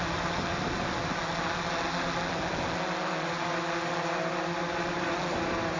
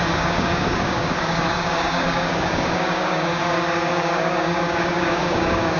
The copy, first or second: second